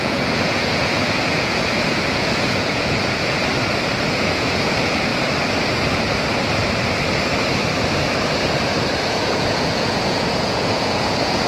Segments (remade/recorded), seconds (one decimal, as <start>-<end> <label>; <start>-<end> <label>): 0.0-3.4 remade; 3.4-4.0 recorded; 4.0-5.1 remade; 5.1-9.1 recorded; 9.1-11.5 remade